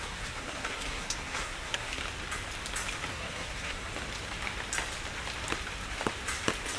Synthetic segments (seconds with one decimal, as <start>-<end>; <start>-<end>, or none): 0.0-2.0; 3.1-3.9